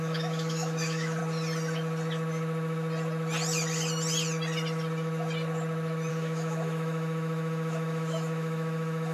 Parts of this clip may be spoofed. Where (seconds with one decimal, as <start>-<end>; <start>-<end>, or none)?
0.0-1.2; 6.1-9.1